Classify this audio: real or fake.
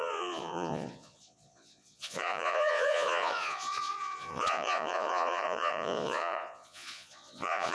fake